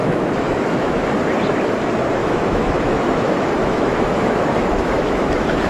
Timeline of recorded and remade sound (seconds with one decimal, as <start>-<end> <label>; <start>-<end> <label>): 0.0-1.1 remade; 1.1-2.2 recorded; 2.2-5.7 remade